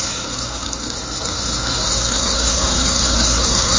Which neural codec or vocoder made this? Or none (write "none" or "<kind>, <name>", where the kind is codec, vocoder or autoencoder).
codec, SNAC